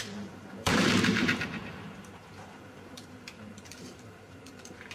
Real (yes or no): no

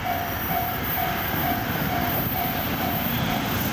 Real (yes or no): no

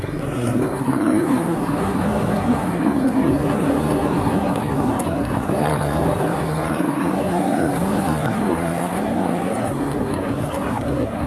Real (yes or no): no